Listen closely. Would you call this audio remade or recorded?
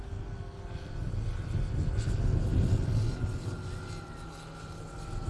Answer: recorded